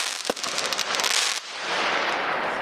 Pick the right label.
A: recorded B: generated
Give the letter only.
A